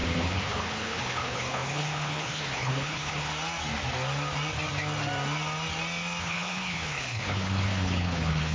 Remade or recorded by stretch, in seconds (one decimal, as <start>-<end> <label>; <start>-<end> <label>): 0.0-3.3 remade; 3.3-6.2 recorded; 6.2-8.5 remade